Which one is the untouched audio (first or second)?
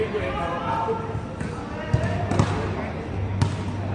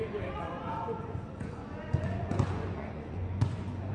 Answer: first